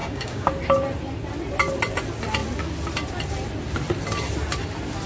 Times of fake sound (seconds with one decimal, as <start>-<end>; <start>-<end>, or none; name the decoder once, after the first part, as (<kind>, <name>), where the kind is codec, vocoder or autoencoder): 0.0-0.5 (codec, DAC)